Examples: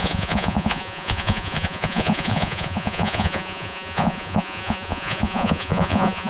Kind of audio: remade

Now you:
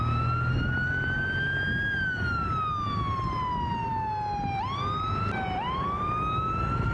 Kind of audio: recorded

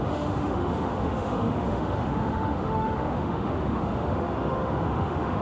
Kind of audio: remade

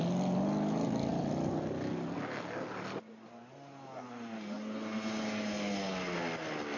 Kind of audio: recorded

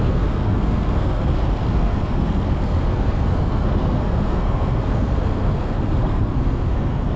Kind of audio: remade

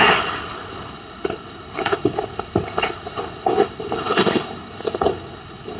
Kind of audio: remade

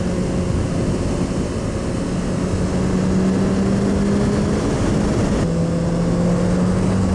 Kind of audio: recorded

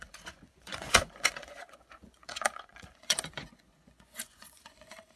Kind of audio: remade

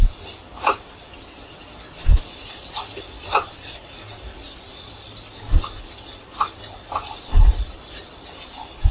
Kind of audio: recorded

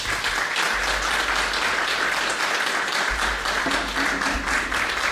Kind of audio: recorded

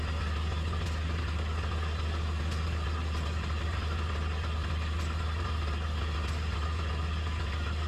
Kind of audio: recorded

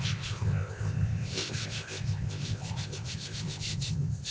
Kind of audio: remade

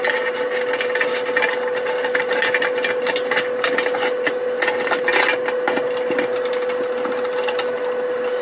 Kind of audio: recorded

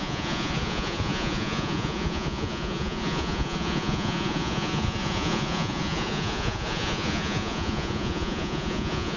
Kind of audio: remade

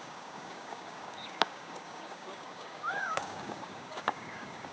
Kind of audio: remade